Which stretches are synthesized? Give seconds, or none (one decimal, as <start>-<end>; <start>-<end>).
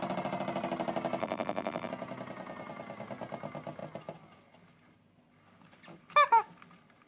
1.2-1.9